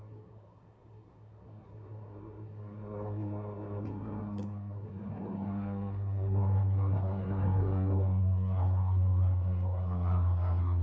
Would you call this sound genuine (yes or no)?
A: no